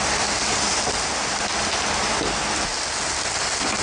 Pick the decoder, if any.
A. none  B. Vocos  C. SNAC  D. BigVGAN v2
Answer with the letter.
A